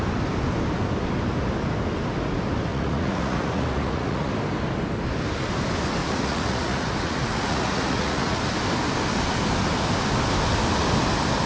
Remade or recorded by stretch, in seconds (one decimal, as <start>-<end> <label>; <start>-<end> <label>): 0.0-2.7 recorded; 2.7-4.3 remade; 4.3-6.0 recorded; 6.0-8.4 remade; 8.4-11.5 recorded